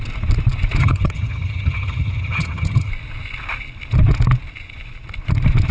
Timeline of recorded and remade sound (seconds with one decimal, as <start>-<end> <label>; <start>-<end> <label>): 0.0-0.8 recorded; 0.8-2.9 remade; 2.9-5.7 recorded